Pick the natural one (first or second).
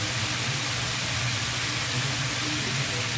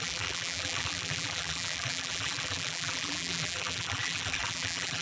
first